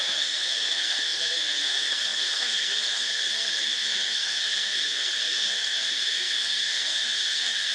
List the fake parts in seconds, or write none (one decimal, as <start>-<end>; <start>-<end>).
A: 0.0-7.7